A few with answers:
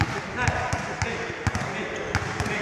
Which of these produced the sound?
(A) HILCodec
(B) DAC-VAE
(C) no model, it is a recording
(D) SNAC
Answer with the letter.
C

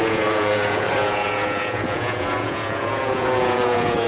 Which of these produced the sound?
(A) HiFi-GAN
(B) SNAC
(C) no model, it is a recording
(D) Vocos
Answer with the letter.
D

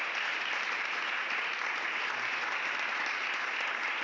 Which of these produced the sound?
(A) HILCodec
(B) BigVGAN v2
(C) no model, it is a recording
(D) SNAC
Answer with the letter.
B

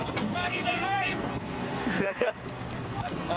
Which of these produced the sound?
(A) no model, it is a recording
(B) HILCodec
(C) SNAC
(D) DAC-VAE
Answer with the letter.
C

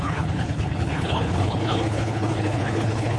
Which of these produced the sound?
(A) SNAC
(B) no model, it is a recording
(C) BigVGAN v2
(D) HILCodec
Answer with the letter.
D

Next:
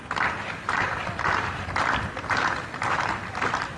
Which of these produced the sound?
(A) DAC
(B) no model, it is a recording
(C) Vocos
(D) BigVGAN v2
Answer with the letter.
B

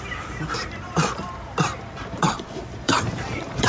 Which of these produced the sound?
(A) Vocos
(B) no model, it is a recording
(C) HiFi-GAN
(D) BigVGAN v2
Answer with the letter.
D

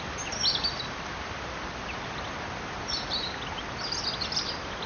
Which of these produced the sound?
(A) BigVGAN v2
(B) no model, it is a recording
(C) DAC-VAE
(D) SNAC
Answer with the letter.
B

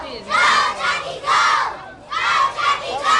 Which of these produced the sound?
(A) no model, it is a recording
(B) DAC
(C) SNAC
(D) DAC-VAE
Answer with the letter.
A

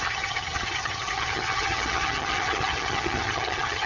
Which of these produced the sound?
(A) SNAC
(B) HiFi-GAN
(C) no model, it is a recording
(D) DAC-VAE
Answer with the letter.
B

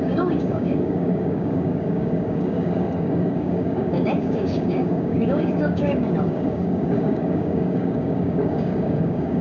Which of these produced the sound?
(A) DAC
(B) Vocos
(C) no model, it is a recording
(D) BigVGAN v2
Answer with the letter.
A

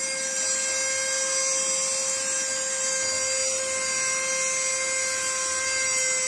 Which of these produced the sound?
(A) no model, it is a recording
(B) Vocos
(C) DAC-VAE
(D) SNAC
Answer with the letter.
A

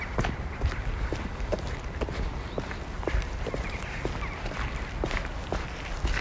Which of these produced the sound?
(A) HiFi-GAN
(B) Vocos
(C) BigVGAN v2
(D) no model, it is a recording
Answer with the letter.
D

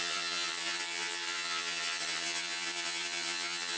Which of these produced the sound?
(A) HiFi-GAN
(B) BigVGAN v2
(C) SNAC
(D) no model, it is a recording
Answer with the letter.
A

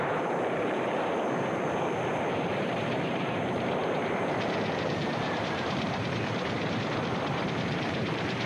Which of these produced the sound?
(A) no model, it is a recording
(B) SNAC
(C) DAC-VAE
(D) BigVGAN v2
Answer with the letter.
D